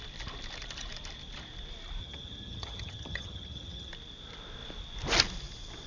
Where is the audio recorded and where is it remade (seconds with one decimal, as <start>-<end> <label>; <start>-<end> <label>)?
0.0-2.0 recorded; 2.0-3.9 remade; 3.9-5.9 recorded